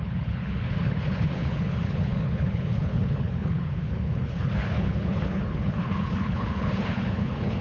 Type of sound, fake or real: fake